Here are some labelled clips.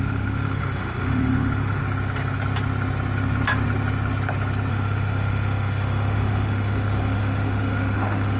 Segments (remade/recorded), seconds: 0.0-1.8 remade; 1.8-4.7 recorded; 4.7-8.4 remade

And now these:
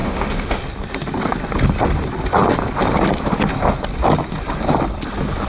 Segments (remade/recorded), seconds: 0.0-0.6 remade; 0.6-5.5 recorded

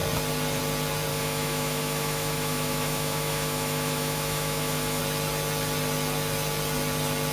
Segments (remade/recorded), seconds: 0.0-1.1 recorded; 1.1-5.0 remade; 5.0-7.3 recorded

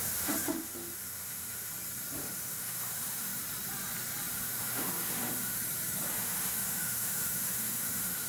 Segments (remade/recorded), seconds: 0.0-1.7 remade; 1.7-2.2 recorded; 2.2-3.4 remade; 3.4-4.3 recorded; 4.3-5.6 remade; 5.6-6.2 recorded; 6.2-8.3 remade

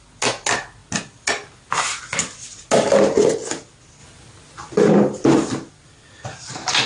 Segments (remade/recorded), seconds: 0.0-6.9 recorded

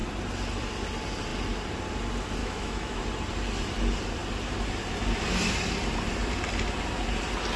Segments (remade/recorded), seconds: 0.0-2.4 recorded; 2.4-3.0 remade; 3.0-7.6 recorded

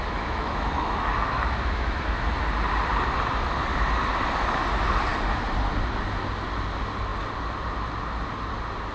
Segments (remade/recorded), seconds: 0.0-2.3 remade; 2.3-8.9 recorded